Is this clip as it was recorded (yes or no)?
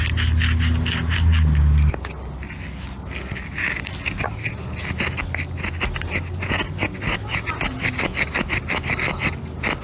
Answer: yes